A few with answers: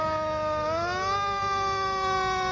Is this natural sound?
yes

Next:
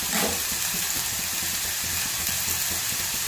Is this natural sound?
yes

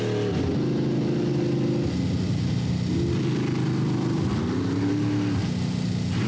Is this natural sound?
yes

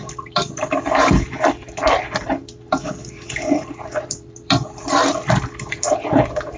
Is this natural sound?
no